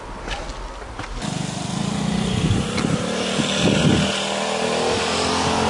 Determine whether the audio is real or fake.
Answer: real